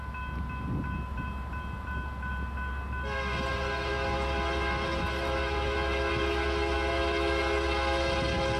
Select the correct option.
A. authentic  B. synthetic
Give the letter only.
A